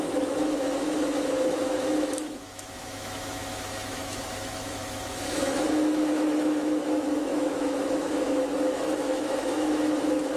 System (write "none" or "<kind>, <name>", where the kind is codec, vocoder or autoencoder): autoencoder, DAC-VAE